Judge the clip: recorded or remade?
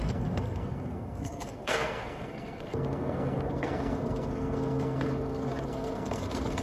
remade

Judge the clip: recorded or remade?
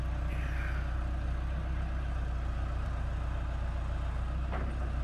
recorded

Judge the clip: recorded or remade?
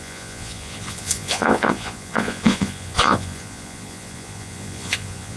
remade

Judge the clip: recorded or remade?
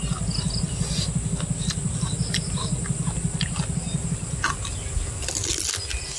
recorded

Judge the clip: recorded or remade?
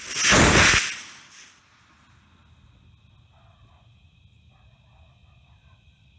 recorded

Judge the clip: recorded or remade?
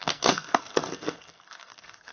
remade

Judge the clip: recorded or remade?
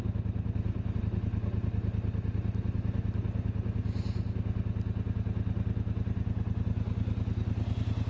recorded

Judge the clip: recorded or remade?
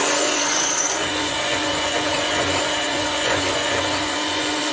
remade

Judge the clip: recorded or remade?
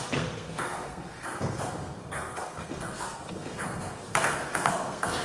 remade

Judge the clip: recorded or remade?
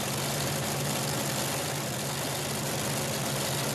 recorded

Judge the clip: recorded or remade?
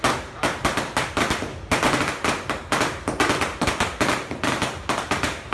recorded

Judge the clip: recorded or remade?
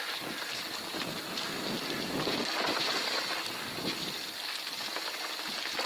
recorded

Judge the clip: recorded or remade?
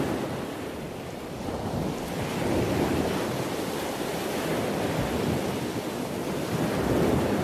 recorded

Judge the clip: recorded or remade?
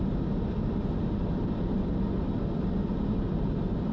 recorded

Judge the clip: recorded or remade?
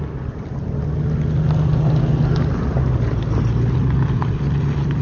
recorded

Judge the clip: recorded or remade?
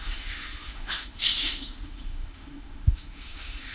remade